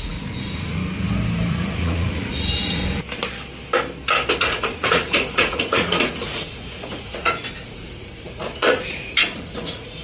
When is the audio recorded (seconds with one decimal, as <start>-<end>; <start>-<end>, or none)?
0.8-1.5; 2.8-4.4